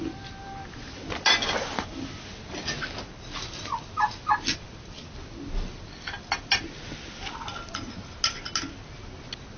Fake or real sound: real